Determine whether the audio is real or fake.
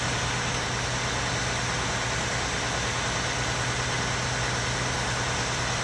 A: real